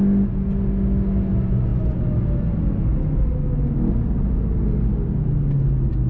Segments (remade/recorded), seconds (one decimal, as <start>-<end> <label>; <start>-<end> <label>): 0.0-6.1 recorded